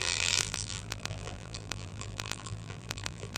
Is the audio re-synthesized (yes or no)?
yes